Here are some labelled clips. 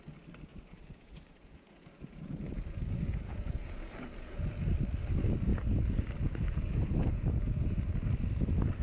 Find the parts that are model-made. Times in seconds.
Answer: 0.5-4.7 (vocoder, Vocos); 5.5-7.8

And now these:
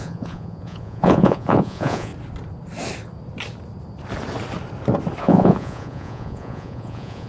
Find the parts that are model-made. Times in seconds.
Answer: 0.0-2.1 (vocoder, Vocos); 5.2-7.3

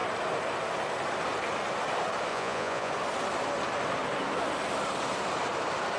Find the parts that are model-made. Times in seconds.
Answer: 2.3-2.9 (vocoder, Vocos)

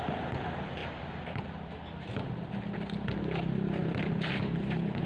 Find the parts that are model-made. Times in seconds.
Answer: none

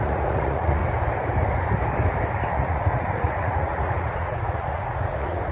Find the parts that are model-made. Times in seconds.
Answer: 0.0-0.8 (vocoder, Vocos); 2.5-5.5

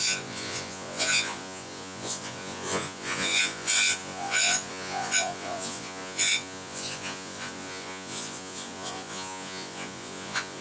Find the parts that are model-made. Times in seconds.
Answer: 0.0-10.6 (vocoder, Vocos)

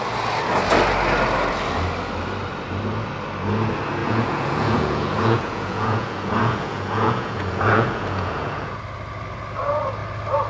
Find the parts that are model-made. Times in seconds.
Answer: 4.0-8.8 (vocoder, Vocos)